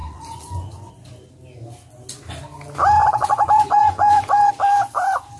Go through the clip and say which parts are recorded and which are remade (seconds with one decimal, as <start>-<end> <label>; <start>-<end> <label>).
0.0-0.9 remade; 0.9-3.0 recorded; 3.0-4.5 remade; 4.5-5.4 recorded